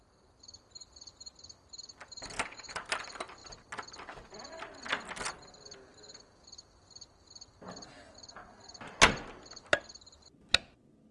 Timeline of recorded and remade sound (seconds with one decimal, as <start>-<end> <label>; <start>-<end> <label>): 0.0-11.1 recorded